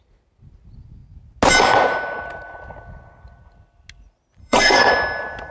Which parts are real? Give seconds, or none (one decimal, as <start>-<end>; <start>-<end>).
0.0-4.4; 4.9-5.5